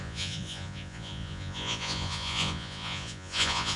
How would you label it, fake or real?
fake